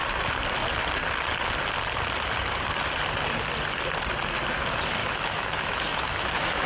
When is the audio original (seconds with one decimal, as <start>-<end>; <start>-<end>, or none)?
0.0-5.0